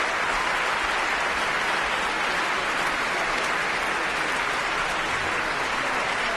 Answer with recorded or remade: recorded